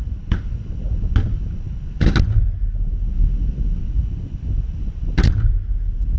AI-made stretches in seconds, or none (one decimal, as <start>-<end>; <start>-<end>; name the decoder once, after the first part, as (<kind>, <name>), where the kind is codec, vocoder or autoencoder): none